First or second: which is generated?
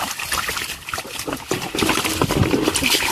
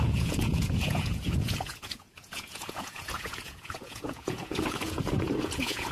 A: second